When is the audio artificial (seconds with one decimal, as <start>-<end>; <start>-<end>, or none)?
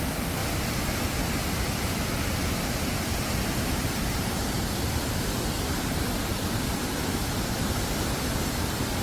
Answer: 0.0-0.4; 2.2-3.1; 5.5-9.0